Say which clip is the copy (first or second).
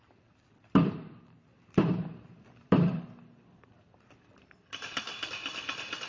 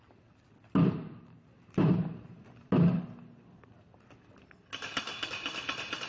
first